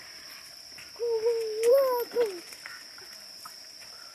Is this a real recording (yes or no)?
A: yes